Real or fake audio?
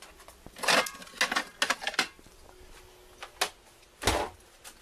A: real